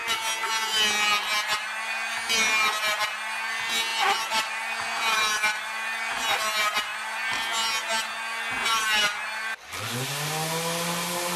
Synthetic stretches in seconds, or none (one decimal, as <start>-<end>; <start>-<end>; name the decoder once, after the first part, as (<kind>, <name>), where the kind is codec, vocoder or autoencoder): 3.9-4.6 (vocoder, BigVGAN v2)